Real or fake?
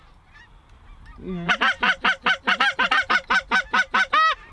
real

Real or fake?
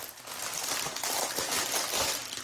real